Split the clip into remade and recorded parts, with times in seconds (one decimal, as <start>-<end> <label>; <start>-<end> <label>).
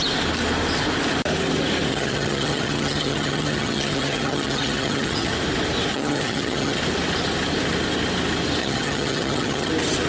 0.0-1.9 recorded; 1.9-5.3 remade; 5.3-5.9 recorded; 5.9-6.8 remade; 6.8-8.6 recorded; 8.6-9.7 remade; 9.7-10.1 recorded